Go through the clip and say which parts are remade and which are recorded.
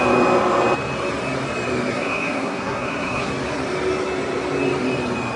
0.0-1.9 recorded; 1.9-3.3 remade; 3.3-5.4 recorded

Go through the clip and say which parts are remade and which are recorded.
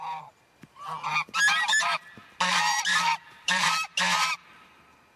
0.0-2.7 recorded; 2.7-3.7 remade; 3.7-5.2 recorded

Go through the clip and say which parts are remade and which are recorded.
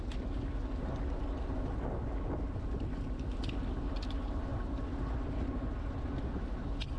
0.0-7.0 recorded